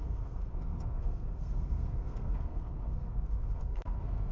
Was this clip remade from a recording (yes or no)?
yes